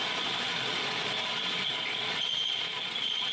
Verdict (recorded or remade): remade